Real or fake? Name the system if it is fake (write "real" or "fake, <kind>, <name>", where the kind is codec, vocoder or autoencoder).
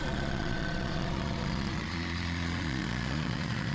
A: fake, vocoder, Vocos